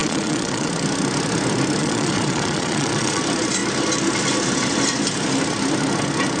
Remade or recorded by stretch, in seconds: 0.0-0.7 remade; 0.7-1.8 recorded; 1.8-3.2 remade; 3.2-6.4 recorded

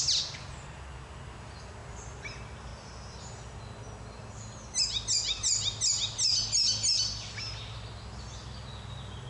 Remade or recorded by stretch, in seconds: 0.0-9.3 recorded

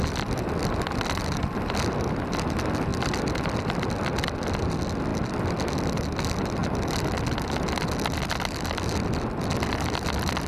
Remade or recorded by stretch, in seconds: 0.0-10.5 recorded

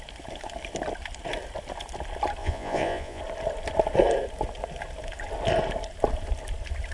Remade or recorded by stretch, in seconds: 0.0-2.4 recorded; 2.4-3.2 remade; 3.2-6.9 recorded

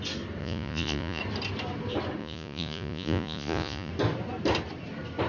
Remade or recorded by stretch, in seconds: 0.0-0.4 recorded; 0.4-1.2 remade; 1.2-2.2 recorded; 2.2-3.9 remade; 3.9-5.3 recorded

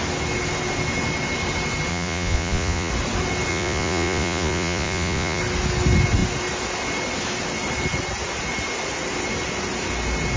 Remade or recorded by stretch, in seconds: 0.0-1.9 recorded; 1.9-2.9 remade; 2.9-3.5 recorded; 3.5-5.4 remade; 5.4-10.4 recorded

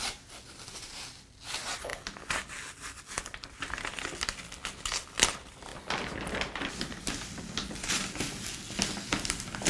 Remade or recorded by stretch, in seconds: 0.0-9.7 recorded